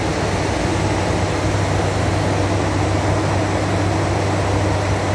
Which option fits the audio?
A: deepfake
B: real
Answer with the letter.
B